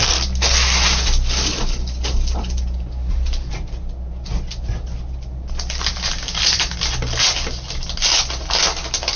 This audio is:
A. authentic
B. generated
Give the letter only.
A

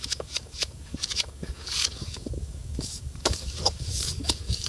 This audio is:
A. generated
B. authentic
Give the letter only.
A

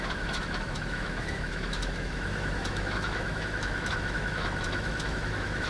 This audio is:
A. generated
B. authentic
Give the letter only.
A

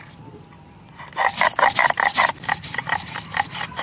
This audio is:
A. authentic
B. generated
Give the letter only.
A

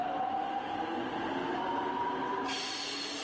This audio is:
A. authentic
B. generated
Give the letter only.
A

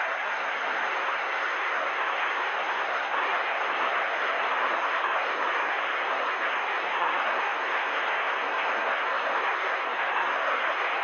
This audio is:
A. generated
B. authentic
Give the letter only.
A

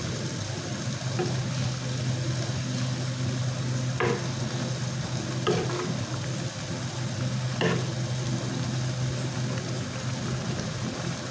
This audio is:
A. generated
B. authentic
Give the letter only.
B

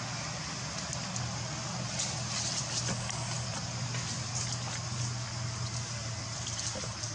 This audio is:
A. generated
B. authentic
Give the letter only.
B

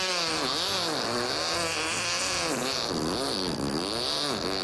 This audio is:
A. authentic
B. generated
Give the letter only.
A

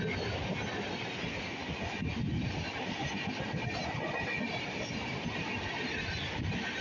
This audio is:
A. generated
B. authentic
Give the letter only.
B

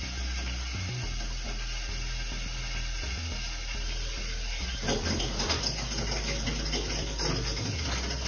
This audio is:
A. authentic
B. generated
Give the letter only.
A